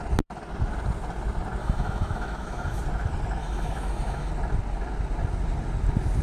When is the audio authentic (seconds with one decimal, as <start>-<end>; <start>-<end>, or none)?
0.0-1.6; 2.8-3.4; 4.3-6.2